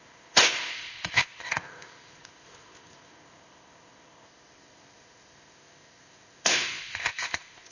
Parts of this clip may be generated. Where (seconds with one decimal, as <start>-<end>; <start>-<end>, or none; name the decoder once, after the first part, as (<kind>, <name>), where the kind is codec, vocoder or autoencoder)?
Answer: 0.0-7.7 (codec, ZipCodec)